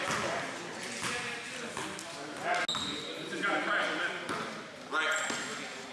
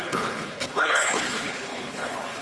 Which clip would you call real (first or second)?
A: first